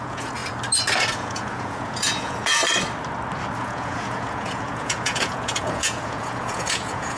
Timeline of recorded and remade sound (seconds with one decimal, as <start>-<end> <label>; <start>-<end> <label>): 0.0-0.4 remade; 0.4-1.1 recorded; 1.1-2.6 remade; 2.6-3.6 recorded; 3.6-7.2 remade